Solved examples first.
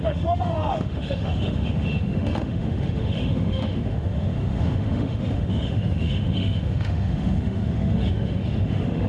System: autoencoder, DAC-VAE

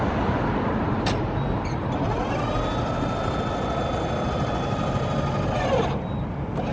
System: none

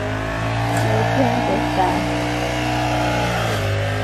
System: none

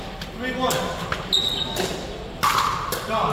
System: none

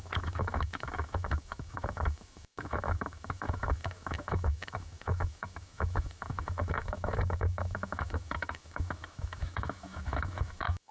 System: autoencoder, DAC-VAE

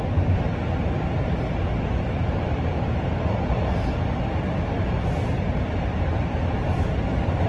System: none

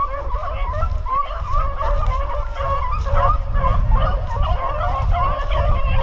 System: none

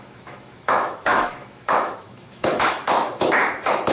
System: autoencoder, DAC-VAE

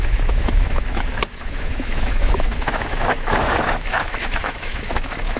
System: autoencoder, DAC-VAE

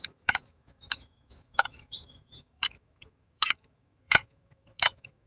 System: autoencoder, DAC-VAE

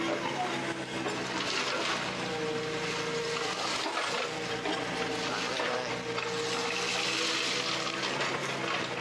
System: none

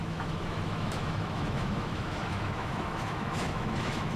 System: autoencoder, DAC-VAE